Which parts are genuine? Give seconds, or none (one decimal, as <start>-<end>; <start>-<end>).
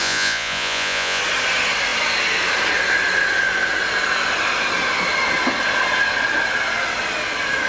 1.2-7.7